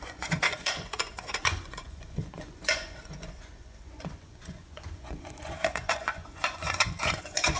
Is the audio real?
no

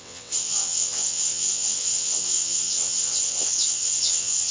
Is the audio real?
no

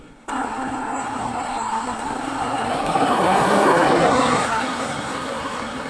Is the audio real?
no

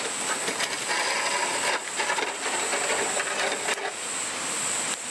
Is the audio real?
yes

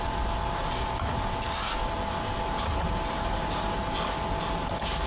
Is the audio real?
yes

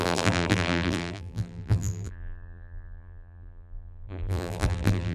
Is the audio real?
no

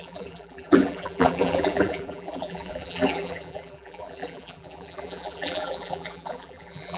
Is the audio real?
no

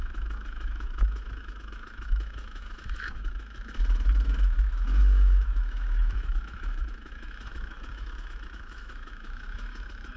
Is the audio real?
no